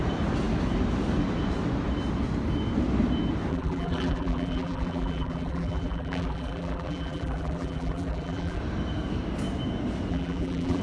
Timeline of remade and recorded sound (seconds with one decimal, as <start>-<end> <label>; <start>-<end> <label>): 0.0-3.5 recorded; 3.5-8.6 remade; 8.6-10.1 recorded; 10.1-10.8 remade